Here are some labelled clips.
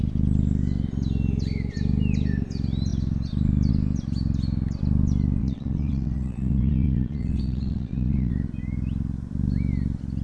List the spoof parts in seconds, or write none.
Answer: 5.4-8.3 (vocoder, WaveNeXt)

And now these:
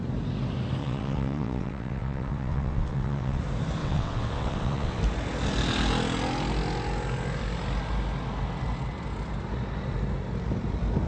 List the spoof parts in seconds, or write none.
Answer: 0.8-3.4 (vocoder, WaveNeXt); 3.8-5.0

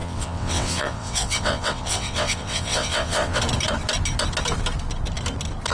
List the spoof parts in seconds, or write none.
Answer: 0.0-3.4 (vocoder, WaveNeXt)

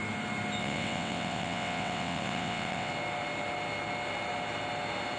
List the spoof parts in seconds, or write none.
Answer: 0.6-2.9 (vocoder, WaveNeXt)

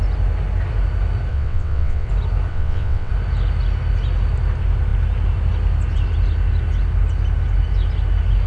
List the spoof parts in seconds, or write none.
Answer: 1.3-2.1 (vocoder, WaveNeXt); 2.5-3.1

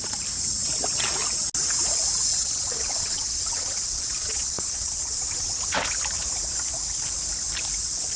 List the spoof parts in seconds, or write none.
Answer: 2.3-5.6 (vocoder, WaveNeXt)